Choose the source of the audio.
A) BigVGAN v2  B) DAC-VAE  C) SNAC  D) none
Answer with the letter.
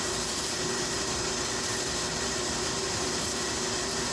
D